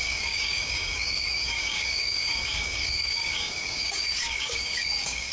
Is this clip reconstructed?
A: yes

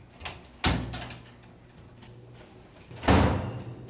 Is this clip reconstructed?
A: no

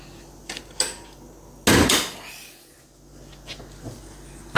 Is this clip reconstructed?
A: no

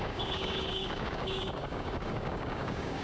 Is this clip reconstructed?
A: yes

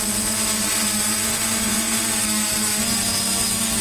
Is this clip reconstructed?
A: no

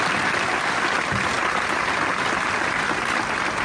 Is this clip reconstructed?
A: no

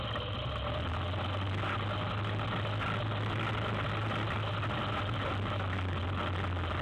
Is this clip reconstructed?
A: no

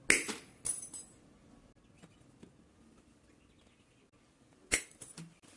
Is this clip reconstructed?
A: no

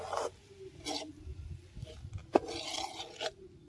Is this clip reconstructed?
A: no